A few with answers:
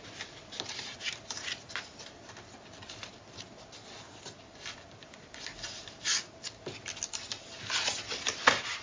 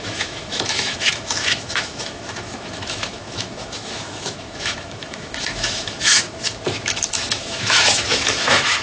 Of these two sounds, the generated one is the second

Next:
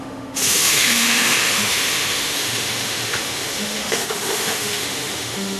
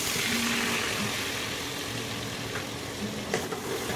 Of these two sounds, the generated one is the first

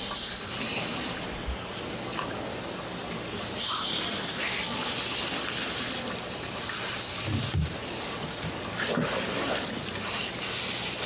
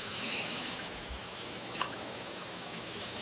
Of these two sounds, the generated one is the second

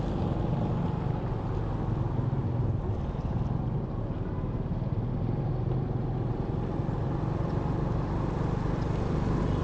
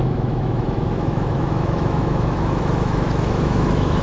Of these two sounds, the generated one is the second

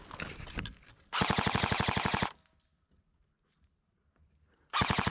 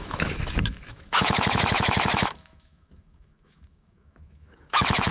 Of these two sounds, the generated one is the second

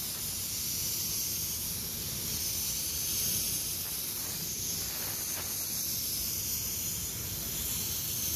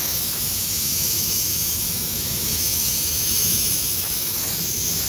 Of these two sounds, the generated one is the second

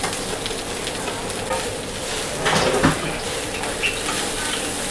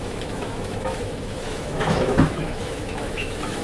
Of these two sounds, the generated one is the second